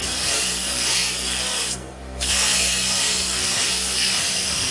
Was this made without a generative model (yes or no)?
no